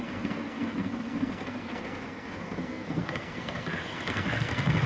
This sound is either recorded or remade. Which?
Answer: remade